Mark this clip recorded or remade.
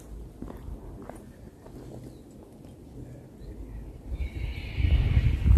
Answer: recorded